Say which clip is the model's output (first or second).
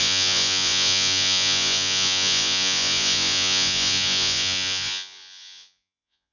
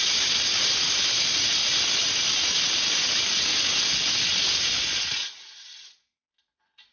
first